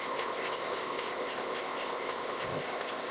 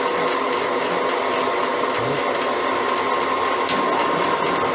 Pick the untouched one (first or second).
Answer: second